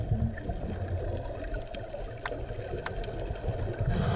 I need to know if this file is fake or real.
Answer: real